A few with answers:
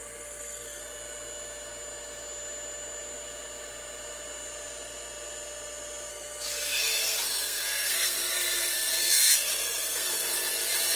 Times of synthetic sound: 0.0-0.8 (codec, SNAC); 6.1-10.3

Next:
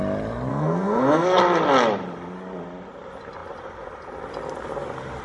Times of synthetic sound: 0.5-1.4 (codec, SNAC)

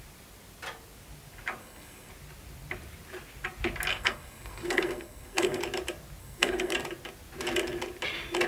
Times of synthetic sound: 1.6-2.1 (codec, SNAC); 3.9-5.6; 6.2-6.7

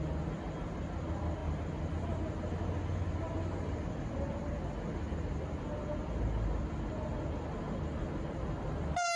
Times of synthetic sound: none

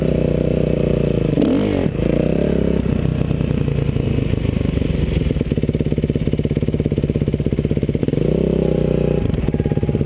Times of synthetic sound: none

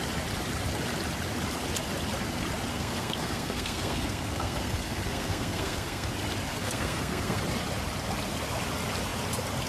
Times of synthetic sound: 2.7-6.1 (codec, SNAC); 6.5-7.4